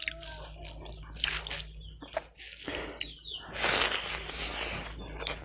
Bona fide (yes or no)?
yes